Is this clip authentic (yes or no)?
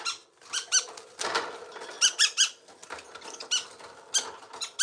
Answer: yes